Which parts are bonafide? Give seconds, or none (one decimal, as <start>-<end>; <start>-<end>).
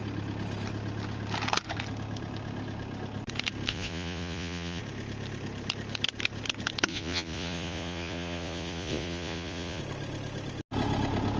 0.0-3.7; 4.8-6.9; 9.8-11.4